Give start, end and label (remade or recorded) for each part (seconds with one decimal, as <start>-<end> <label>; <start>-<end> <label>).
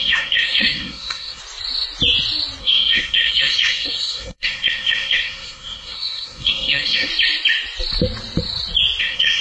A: 0.0-1.4 remade; 1.4-2.6 recorded; 2.6-7.1 remade; 7.1-9.0 recorded; 9.0-9.4 remade